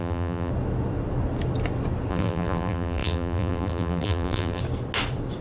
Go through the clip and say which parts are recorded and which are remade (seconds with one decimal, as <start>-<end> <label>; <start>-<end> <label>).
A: 0.0-0.5 remade; 0.5-2.1 recorded; 2.1-4.6 remade; 4.6-5.4 recorded